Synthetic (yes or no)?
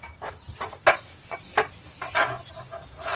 yes